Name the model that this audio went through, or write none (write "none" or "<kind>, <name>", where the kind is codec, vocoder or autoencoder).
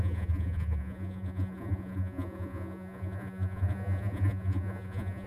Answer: vocoder, Vocos